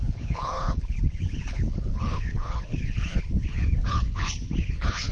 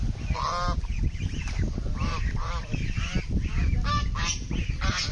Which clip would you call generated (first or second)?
first